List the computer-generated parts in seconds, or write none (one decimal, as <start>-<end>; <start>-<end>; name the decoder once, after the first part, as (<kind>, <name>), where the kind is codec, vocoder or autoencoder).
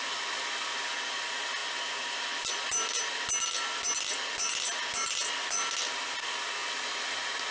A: none